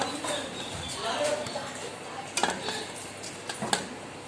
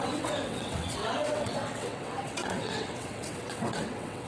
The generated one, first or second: second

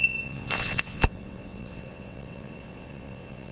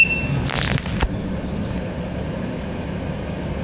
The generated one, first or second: first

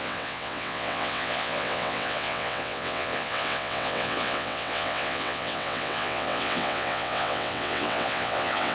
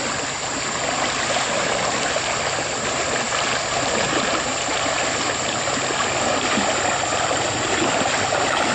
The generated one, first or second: first